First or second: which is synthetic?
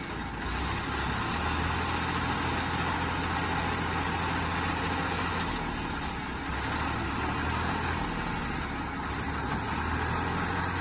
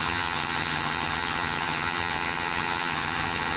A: second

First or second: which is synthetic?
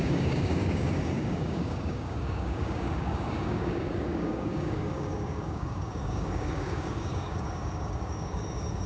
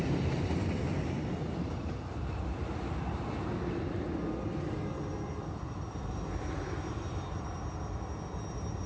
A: first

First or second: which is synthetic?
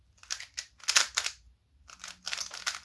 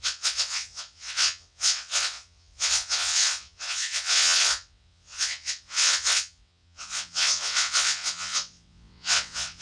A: second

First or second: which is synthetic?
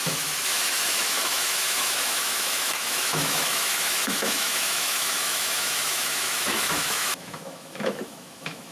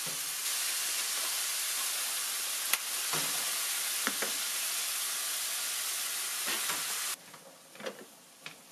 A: first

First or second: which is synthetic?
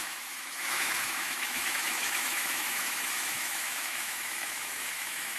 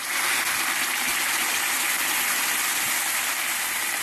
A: first